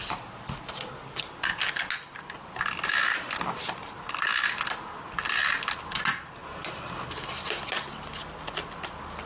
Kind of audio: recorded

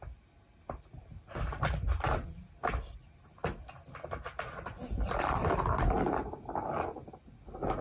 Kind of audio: recorded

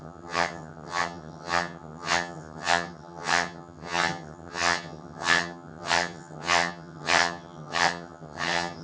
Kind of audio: remade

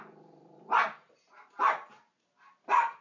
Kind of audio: recorded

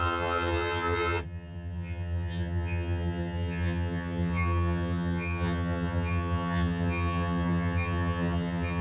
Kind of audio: remade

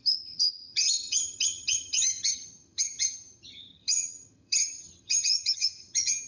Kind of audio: remade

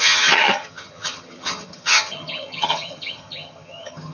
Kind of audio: remade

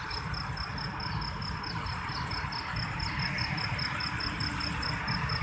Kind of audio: recorded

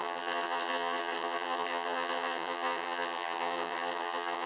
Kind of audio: remade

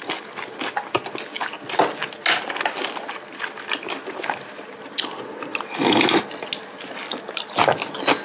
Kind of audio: recorded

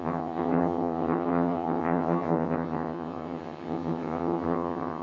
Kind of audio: remade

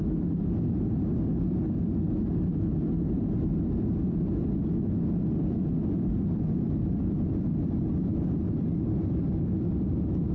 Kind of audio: recorded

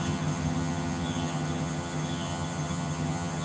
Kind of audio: remade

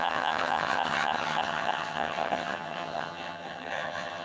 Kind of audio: remade